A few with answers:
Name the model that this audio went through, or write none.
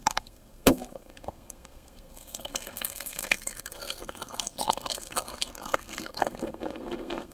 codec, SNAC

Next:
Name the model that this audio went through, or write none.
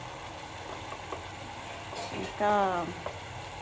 none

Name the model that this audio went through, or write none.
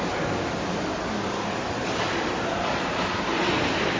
none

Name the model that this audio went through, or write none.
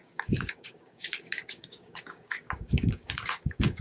codec, DAC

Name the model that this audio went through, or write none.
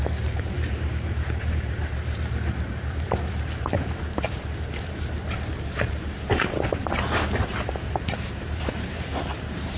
vocoder, BigVGAN v2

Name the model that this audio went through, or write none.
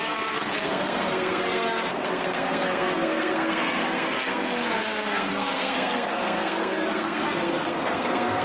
codec, SNAC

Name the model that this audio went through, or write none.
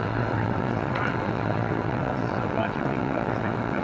vocoder, WaveNeXt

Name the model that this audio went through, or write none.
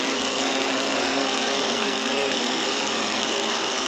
codec, SNAC